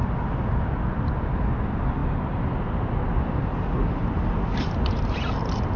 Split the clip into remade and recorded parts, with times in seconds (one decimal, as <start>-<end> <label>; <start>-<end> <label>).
0.0-4.5 recorded; 4.5-5.3 remade; 5.3-5.8 recorded